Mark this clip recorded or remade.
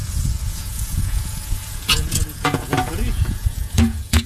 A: remade